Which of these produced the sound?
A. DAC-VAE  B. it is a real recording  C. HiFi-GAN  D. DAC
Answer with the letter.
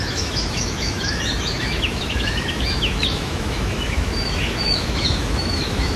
A